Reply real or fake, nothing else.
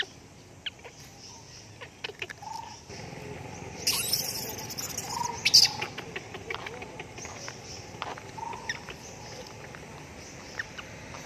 real